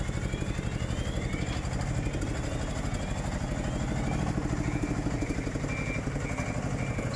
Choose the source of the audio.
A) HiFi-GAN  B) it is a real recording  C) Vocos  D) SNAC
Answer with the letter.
B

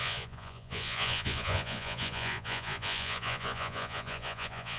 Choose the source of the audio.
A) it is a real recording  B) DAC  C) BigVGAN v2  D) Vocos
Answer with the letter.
D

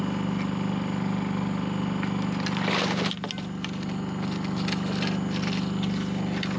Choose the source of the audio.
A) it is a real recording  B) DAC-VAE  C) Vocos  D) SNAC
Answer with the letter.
A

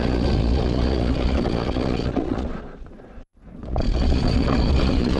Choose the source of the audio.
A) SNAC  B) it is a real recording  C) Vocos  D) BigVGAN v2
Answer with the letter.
C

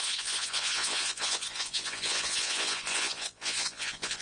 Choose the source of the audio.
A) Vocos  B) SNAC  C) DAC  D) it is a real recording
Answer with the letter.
A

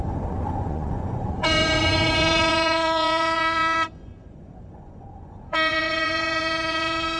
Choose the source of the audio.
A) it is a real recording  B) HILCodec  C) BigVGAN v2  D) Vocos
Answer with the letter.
D